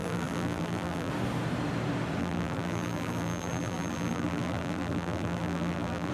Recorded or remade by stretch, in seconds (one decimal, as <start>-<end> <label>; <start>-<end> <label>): 0.0-1.1 remade; 1.1-2.2 recorded; 2.2-6.1 remade